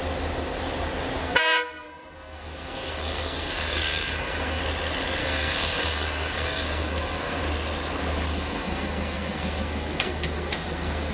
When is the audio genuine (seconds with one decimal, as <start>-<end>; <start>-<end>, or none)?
0.0-1.2; 4.6-5.2; 7.4-8.3